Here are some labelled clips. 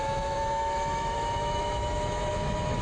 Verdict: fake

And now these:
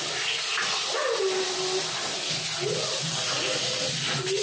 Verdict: real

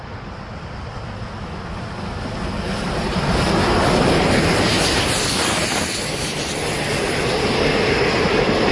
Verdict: real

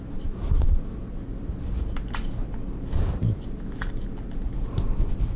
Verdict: real